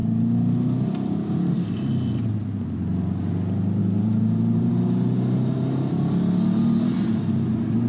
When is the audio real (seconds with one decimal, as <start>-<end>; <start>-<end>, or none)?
0.0-3.8; 4.7-7.9